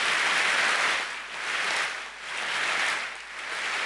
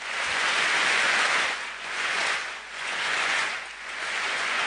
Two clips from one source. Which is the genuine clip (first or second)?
first